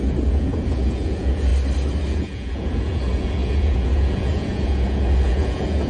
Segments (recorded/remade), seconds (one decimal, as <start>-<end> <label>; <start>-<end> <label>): 0.0-1.5 remade; 1.5-2.1 recorded; 2.1-5.9 remade